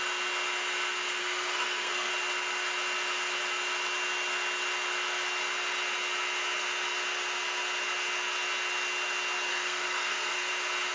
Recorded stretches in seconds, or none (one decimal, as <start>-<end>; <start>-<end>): 0.0-1.2; 2.1-9.5; 10.5-10.9